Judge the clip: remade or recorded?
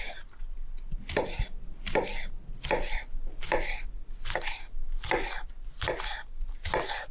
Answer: recorded